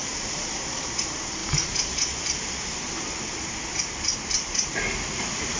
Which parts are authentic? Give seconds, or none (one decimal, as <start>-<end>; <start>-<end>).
0.0-5.6